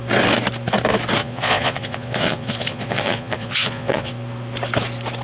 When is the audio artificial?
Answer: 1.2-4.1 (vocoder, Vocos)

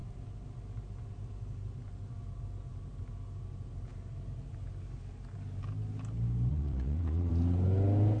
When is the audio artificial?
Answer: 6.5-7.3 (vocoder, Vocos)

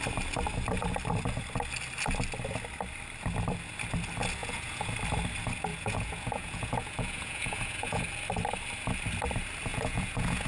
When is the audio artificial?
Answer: 4.4-4.9 (vocoder, Vocos); 5.7-8.0; 9.7-10.5

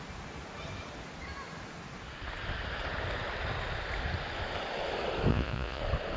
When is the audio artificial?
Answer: 5.3-5.8 (vocoder, Vocos)

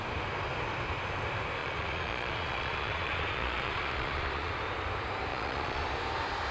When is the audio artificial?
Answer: 1.6-4.5 (vocoder, Vocos); 5.3-5.8

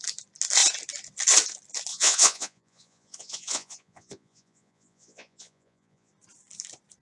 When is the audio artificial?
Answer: 1.9-6.1 (vocoder, Vocos)

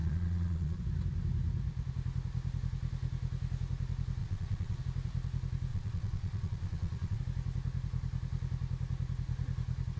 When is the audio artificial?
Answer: 0.0-0.8 (vocoder, Vocos); 4.2-4.8; 5.7-7.2

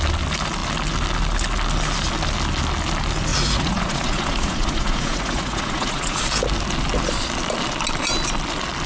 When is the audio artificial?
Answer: 3.3-6.2 (vocoder, Vocos)